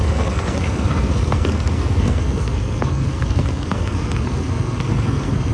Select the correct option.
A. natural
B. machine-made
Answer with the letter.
B